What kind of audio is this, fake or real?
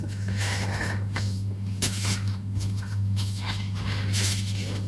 fake